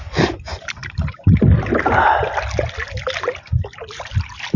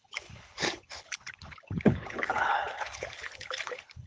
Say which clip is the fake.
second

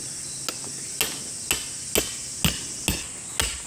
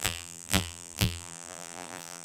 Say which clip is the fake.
second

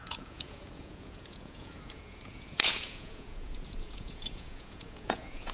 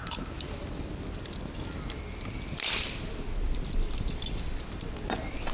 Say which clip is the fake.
first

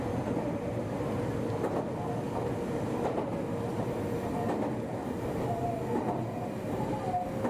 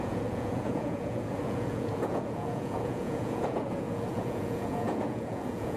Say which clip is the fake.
second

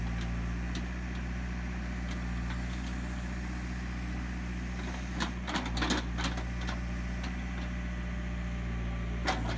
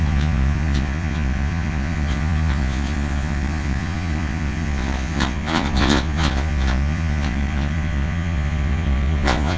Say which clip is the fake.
second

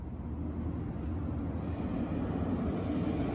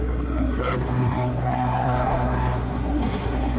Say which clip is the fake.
second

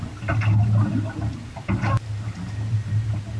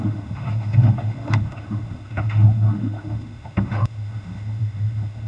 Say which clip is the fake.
second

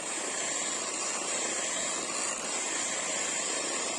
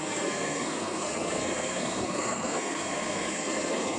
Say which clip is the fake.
second